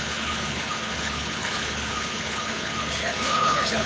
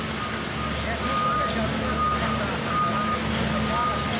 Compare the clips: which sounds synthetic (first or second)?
first